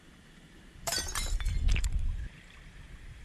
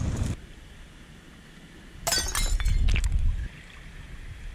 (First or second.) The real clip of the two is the second